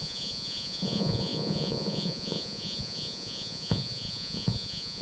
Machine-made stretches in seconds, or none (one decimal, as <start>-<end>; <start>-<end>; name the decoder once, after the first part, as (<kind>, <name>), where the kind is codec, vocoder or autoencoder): 0.0-5.0 (vocoder, Vocos)

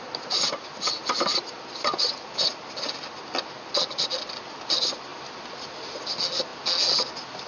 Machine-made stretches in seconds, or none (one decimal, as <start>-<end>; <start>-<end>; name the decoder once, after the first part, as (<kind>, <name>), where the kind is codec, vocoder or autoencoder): none

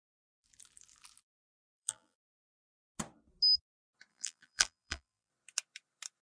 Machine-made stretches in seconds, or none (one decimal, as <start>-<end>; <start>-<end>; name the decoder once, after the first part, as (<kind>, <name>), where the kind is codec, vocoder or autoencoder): 1.5-2.4 (vocoder, BigVGAN v2); 4.1-5.3

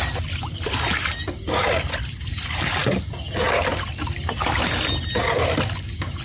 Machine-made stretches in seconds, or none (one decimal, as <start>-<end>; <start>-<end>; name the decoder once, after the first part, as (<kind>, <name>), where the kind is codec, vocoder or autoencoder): none

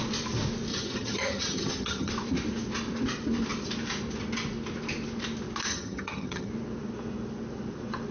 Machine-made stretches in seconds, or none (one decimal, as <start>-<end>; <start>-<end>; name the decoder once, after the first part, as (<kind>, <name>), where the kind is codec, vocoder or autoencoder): 0.7-2.1 (vocoder, HiFi-GAN); 5.7-6.5

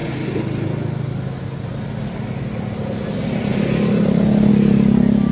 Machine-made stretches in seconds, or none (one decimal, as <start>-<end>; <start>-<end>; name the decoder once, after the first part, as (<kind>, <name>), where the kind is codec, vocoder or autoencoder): none

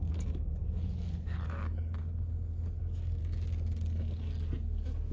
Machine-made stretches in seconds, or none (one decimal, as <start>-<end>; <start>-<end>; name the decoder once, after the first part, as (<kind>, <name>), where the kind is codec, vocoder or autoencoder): 0.0-3.2 (codec, DAC)

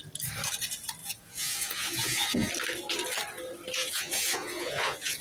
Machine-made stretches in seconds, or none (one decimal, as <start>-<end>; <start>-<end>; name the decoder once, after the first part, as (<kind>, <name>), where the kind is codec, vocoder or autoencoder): 1.0-2.5 (vocoder, Vocos); 3.8-5.2